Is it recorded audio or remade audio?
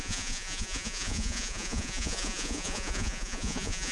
remade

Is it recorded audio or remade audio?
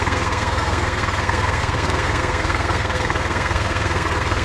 remade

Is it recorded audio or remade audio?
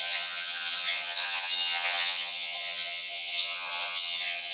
remade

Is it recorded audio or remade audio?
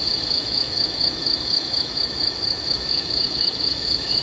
remade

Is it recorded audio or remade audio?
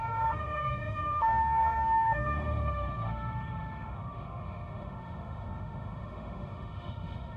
remade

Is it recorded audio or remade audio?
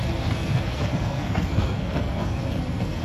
remade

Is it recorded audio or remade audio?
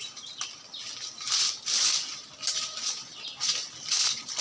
recorded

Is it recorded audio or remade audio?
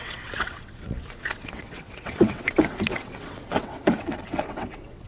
remade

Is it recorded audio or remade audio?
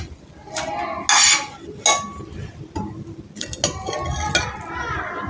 recorded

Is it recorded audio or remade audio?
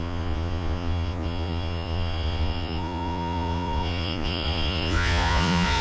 remade